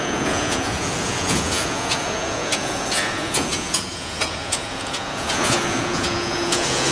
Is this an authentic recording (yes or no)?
no